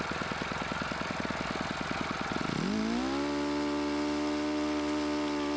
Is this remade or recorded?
recorded